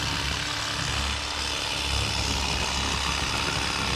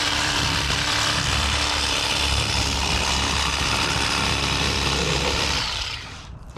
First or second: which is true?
first